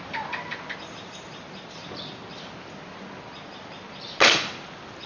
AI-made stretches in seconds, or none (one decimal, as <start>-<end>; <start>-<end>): none